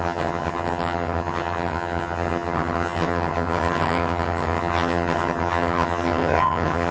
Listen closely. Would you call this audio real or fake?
fake